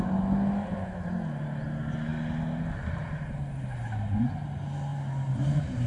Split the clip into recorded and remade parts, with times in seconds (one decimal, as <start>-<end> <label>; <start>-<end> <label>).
0.0-5.9 recorded